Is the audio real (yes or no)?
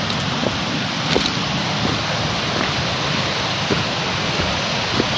yes